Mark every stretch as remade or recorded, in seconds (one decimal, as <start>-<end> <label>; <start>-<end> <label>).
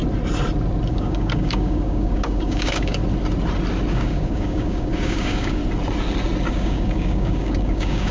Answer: 0.0-0.9 recorded; 0.9-3.0 remade; 3.0-3.9 recorded; 3.9-5.6 remade; 5.6-6.5 recorded; 6.5-8.1 remade